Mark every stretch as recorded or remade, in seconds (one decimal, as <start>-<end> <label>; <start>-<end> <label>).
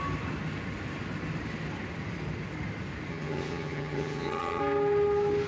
0.0-3.1 recorded; 3.1-4.6 remade; 4.6-5.5 recorded